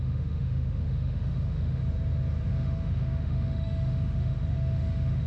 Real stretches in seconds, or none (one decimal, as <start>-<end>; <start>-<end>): 1.8-2.5